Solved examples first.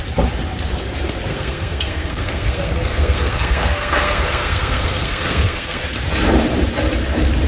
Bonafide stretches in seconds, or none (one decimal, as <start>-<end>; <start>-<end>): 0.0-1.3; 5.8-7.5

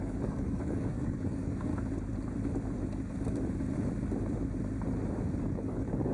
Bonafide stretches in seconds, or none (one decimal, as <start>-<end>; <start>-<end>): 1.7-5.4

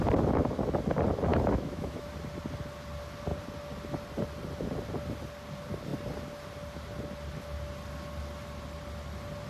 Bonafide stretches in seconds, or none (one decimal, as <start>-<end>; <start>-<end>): 0.0-1.3; 2.1-9.5

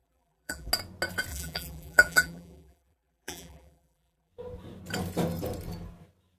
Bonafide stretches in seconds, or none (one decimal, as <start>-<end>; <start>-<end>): 0.7-1.3; 4.3-6.4

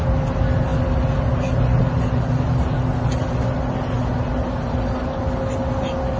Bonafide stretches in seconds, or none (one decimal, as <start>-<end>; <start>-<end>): 0.0-6.2

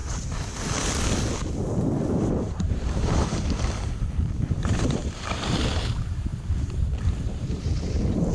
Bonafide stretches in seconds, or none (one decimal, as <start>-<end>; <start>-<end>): 0.0-2.7; 6.3-7.1